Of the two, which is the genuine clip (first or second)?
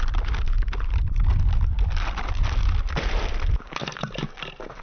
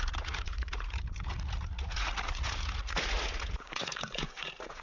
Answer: first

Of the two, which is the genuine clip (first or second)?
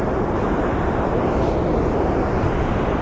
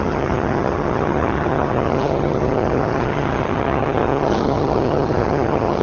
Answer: first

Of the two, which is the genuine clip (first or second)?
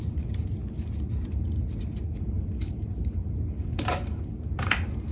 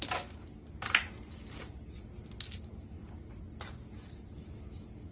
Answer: second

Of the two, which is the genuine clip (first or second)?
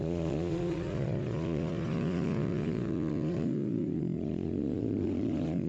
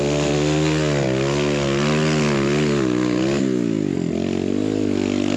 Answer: second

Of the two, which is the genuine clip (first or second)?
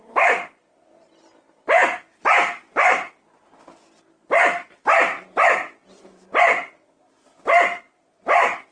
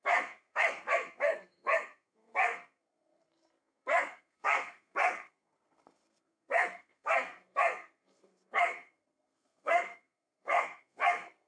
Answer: first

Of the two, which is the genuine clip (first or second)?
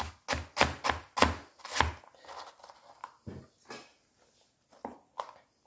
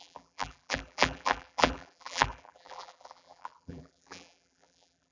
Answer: first